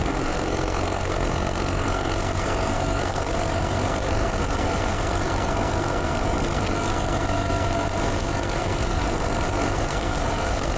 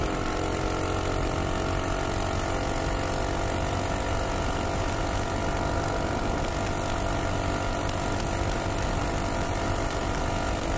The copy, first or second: first